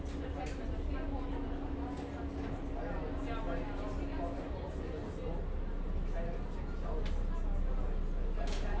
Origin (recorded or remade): recorded